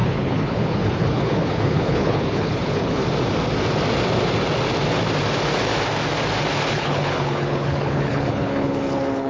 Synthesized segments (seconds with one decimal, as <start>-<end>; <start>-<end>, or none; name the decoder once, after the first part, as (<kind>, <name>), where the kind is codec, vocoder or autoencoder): 0.0-3.0 (codec, HILCodec); 6.7-9.3